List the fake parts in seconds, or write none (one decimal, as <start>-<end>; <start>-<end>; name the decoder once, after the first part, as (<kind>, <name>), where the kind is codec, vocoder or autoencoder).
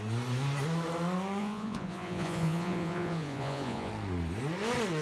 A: 1.4-3.9 (vocoder, Vocos)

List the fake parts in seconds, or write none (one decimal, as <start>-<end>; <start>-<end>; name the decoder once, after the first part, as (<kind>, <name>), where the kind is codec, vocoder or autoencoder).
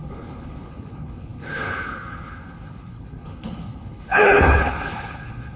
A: 0.0-5.6 (codec, HILCodec)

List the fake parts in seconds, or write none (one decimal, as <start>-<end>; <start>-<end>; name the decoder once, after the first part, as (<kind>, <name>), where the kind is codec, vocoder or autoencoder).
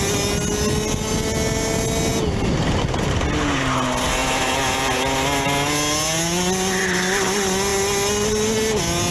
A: none